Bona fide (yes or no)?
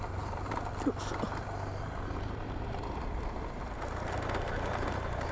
no